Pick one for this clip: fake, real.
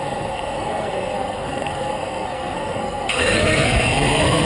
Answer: fake